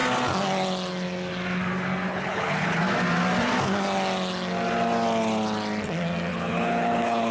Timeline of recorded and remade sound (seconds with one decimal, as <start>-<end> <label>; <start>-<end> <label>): 0.0-2.1 recorded; 2.1-2.8 remade; 2.8-6.3 recorded; 6.3-7.3 remade